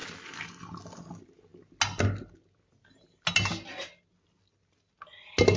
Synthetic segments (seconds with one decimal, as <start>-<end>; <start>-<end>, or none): none